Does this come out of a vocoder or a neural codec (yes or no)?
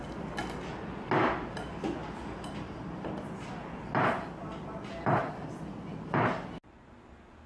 no